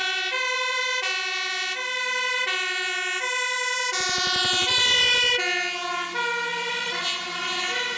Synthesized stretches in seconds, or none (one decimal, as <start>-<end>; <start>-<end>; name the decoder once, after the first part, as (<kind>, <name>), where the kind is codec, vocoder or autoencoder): 0.0-4.8 (vocoder, BigVGAN v2); 6.5-7.0